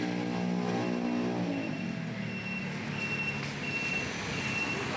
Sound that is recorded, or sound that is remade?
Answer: recorded